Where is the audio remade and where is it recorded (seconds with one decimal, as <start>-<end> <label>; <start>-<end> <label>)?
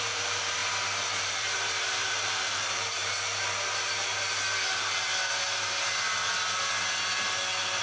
0.0-0.6 remade; 0.6-1.2 recorded; 1.2-3.0 remade; 3.0-7.8 recorded